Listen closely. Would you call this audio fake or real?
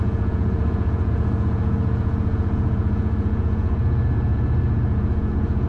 fake